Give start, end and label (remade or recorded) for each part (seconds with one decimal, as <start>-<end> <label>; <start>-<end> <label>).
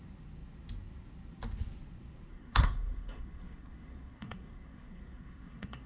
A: 0.0-2.3 recorded; 2.3-5.9 remade